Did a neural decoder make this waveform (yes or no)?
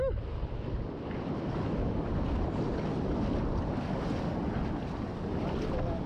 no